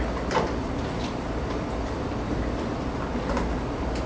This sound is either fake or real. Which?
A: real